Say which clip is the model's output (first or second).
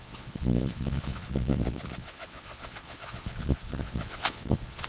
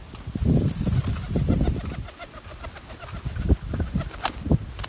first